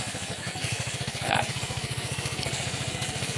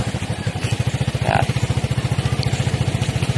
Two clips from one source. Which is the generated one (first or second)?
first